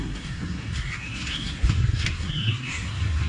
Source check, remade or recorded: remade